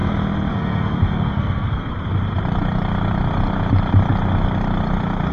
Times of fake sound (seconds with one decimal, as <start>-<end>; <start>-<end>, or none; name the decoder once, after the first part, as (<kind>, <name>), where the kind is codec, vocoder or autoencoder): 0.5-1.9 (codec, SNAC)